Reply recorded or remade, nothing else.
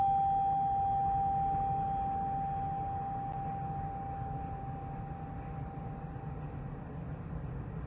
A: recorded